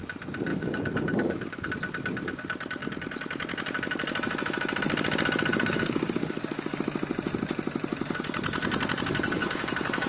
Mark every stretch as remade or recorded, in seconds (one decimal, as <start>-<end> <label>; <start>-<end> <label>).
0.0-0.5 recorded; 0.5-1.7 remade; 1.7-5.5 recorded; 5.5-6.8 remade; 6.8-9.4 recorded; 9.4-10.1 remade